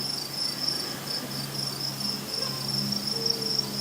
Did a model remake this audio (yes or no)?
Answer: no